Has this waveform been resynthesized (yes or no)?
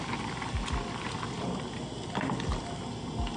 no